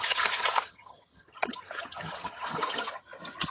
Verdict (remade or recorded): remade